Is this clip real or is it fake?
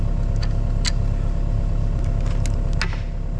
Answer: real